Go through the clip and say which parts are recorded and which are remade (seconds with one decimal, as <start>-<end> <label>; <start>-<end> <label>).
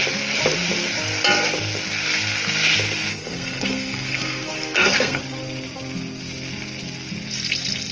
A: 0.0-3.1 recorded; 3.1-5.2 remade; 5.2-7.9 recorded